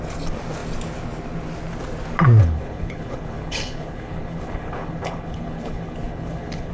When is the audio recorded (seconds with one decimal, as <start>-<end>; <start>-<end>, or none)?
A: 0.0-2.4